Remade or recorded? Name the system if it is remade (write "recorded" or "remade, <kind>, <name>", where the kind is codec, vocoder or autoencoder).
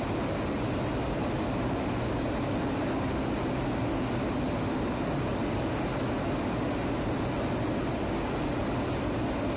recorded